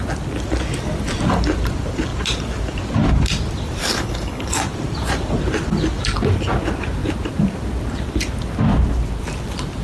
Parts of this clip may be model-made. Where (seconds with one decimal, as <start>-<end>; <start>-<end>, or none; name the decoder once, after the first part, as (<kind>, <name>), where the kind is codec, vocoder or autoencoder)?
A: 3.8-4.5 (codec, HILCodec)